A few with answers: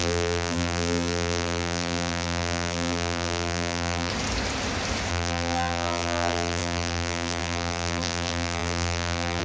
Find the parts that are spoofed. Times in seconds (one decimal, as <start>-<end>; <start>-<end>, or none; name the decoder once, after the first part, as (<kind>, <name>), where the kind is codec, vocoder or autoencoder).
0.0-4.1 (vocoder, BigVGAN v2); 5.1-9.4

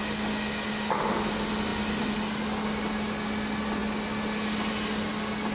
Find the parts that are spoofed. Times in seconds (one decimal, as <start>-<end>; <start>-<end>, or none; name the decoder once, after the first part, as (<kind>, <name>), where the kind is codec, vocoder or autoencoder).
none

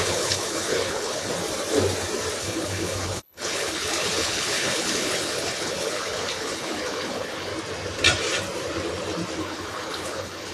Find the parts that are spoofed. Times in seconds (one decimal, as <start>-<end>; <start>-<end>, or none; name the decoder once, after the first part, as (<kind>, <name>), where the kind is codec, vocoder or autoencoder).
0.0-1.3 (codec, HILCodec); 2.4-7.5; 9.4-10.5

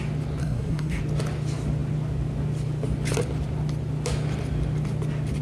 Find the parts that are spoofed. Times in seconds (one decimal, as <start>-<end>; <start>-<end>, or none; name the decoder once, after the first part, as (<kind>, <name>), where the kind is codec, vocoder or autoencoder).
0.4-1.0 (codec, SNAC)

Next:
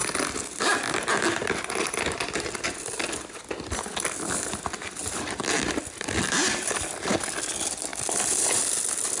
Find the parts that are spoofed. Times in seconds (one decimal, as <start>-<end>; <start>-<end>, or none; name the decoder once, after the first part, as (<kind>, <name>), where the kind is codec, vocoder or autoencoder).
5.0-6.9 (vocoder, BigVGAN v2); 7.9-9.2